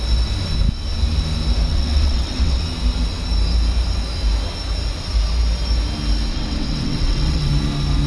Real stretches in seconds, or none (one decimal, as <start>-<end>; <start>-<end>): 0.0-1.7; 2.6-6.3; 7.5-8.1